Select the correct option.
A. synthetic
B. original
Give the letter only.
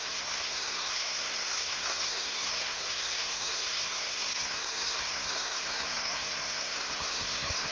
A